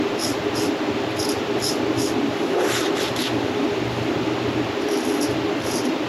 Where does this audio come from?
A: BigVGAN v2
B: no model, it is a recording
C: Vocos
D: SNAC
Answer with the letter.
B